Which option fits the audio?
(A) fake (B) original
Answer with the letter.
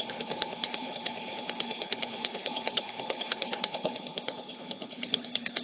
A